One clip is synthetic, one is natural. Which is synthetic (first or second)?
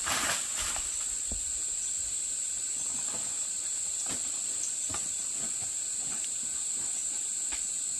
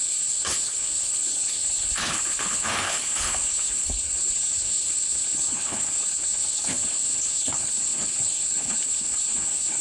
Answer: second